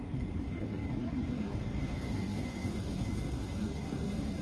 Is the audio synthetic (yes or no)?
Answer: yes